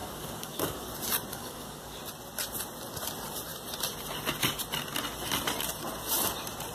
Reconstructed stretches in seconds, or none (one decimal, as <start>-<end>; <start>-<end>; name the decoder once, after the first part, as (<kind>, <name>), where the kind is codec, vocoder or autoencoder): 0.0-0.9 (codec, DAC); 1.3-2.0